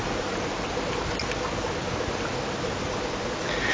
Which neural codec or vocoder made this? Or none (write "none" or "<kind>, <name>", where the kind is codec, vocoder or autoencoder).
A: none